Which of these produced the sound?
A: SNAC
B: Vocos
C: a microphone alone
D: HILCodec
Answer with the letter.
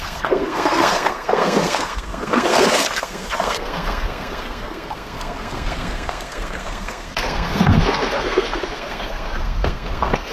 A